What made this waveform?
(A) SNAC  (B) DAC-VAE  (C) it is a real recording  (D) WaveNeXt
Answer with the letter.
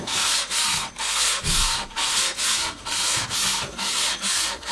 A